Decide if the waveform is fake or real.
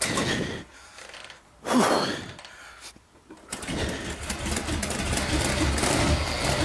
real